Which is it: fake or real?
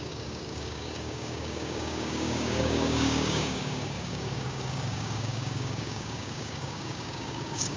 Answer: fake